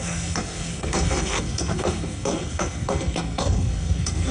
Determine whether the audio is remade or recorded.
remade